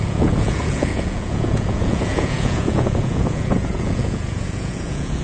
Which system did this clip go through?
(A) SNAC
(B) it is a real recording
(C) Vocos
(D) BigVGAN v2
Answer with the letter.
C